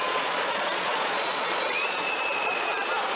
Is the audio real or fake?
fake